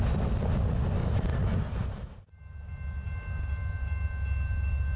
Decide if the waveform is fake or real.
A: real